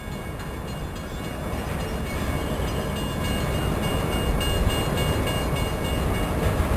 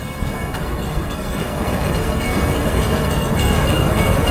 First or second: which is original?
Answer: first